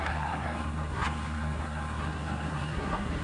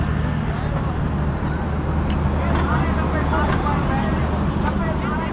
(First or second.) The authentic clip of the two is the second